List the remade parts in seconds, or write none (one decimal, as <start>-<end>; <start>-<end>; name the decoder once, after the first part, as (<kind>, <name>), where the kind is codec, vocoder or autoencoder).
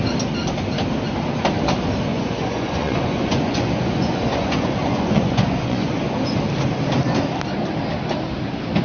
2.1-6.1 (vocoder, Vocos)